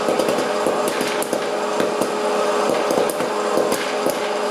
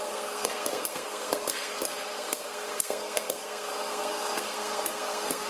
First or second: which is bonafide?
first